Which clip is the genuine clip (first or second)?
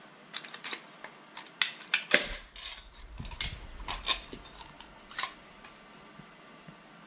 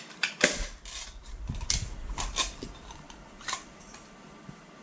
first